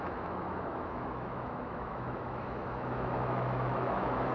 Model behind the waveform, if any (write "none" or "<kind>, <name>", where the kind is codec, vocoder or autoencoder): autoencoder, DAC-VAE